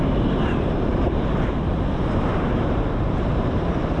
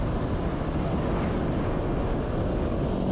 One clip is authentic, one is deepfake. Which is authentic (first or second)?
second